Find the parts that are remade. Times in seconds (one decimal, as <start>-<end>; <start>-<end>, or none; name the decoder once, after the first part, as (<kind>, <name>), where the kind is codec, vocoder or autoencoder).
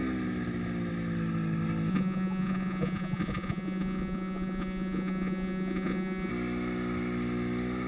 1.9-6.3 (vocoder, Vocos)